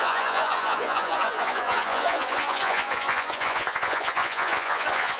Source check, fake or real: fake